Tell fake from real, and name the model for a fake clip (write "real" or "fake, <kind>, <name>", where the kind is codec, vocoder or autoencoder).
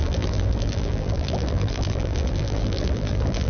fake, vocoder, BigVGAN v2